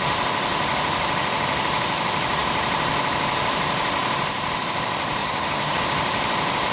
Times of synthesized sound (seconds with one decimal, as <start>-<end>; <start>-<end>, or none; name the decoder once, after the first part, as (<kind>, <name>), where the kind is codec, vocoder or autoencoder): 5.2-5.8 (vocoder, HiFi-GAN)